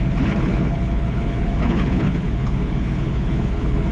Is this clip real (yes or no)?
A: no